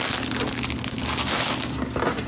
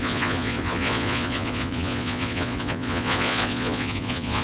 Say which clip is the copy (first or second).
second